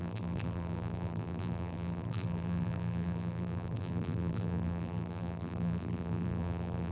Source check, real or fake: fake